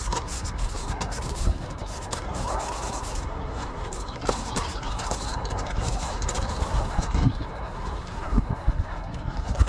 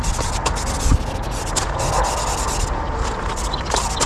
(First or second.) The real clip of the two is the second